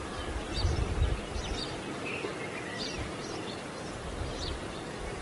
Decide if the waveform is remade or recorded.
remade